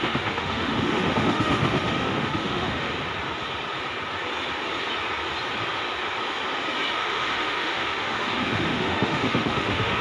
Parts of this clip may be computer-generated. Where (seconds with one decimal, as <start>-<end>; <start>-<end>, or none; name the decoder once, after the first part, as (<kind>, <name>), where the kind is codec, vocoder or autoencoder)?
0.0-2.9 (autoencoder, DAC-VAE); 6.9-10.0